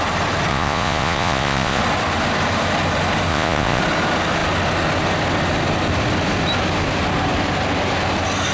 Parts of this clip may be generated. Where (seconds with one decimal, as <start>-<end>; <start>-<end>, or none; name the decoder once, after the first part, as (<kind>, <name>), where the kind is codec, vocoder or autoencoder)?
0.5-1.8 (vocoder, Vocos); 3.3-3.8